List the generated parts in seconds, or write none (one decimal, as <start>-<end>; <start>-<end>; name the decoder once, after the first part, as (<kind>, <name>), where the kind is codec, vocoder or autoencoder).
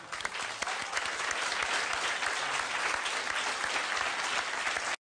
none